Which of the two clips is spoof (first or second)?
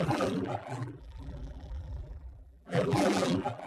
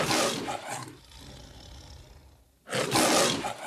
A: first